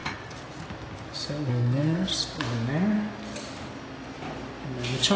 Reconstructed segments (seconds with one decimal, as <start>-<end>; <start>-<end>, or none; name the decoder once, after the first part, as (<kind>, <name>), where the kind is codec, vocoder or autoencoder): 1.5-2.1 (codec, SNAC)